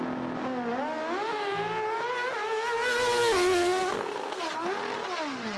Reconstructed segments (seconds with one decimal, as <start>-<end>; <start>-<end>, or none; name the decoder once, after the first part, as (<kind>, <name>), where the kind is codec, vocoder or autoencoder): 3.8-4.4 (codec, SNAC)